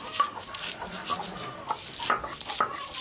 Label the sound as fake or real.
real